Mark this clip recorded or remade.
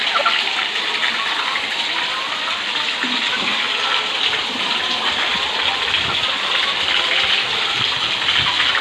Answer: recorded